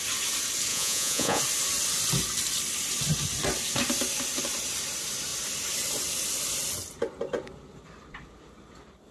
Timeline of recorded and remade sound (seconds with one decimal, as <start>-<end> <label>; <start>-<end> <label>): 0.0-0.7 recorded; 0.7-1.4 remade; 1.4-9.1 recorded